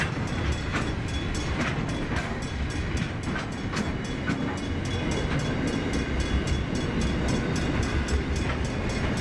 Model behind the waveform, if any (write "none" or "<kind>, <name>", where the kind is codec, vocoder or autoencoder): none